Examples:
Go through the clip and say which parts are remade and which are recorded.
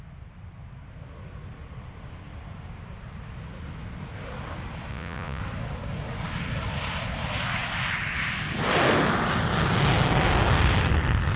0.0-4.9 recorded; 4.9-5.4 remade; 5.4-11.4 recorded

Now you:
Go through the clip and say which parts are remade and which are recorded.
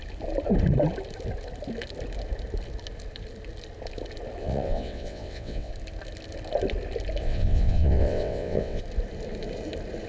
0.0-4.4 recorded; 4.4-5.7 remade; 5.7-7.2 recorded; 7.2-8.8 remade; 8.8-10.1 recorded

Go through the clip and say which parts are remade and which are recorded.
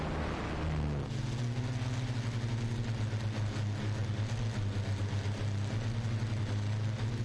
0.0-7.2 recorded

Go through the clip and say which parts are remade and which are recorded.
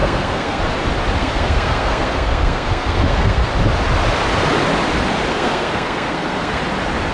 0.0-0.6 remade; 0.6-1.2 recorded; 1.2-3.5 remade; 3.5-5.3 recorded; 5.3-6.6 remade; 6.6-7.1 recorded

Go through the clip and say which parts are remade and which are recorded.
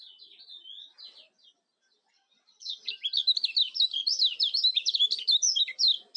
0.0-2.1 recorded; 2.1-2.9 remade; 2.9-6.2 recorded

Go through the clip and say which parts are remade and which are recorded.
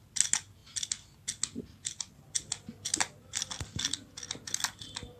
0.0-5.2 recorded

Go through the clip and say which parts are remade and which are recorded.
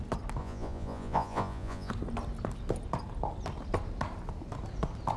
0.0-0.4 recorded; 0.4-1.9 remade; 1.9-5.2 recorded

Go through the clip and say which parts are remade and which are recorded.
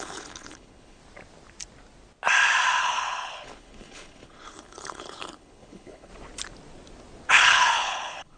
0.0-1.0 remade; 1.0-2.8 recorded; 2.8-6.1 remade; 6.1-7.3 recorded; 7.3-8.4 remade